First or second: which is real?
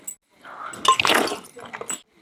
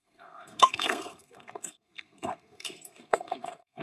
first